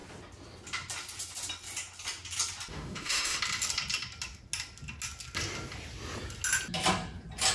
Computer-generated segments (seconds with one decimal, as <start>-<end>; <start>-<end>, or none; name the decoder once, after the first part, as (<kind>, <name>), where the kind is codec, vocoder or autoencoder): 2.7-3.4 (autoencoder, DAC-VAE)